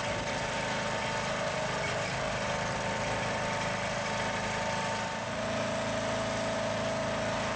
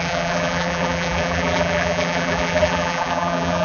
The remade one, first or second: second